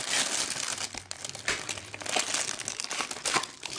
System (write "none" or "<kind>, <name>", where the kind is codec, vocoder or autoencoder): none